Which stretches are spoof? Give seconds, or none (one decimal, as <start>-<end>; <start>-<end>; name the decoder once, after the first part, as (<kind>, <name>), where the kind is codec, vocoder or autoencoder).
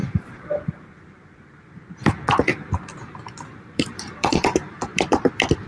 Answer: 0.0-0.6 (vocoder, BigVGAN v2); 2.5-5.3